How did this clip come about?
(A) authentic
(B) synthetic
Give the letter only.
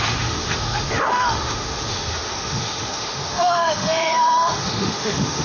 B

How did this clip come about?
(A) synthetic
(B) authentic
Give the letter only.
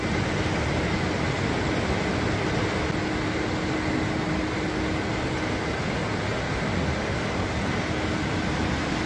B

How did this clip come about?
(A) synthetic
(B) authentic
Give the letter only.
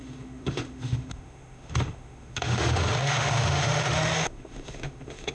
A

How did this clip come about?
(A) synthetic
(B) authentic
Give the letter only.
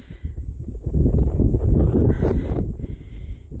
B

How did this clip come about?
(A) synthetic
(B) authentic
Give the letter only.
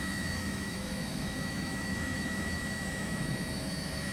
A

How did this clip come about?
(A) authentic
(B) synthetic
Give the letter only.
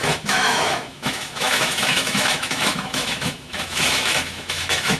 B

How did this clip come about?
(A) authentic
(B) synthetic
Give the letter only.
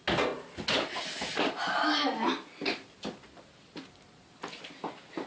A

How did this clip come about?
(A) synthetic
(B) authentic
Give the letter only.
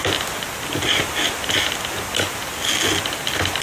B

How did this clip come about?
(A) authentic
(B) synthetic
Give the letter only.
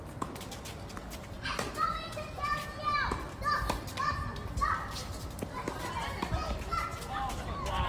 A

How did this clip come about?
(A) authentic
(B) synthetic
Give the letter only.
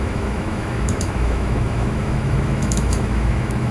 B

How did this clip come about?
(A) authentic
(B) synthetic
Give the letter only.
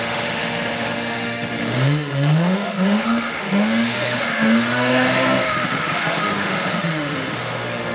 B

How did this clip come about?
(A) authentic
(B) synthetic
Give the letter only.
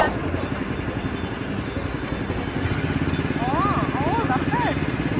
A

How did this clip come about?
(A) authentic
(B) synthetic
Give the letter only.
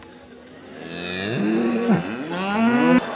A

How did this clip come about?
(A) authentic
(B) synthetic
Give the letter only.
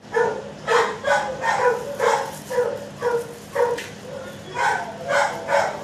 A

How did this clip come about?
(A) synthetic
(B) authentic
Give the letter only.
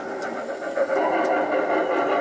B